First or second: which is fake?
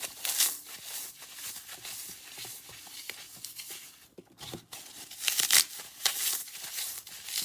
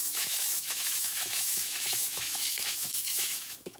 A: second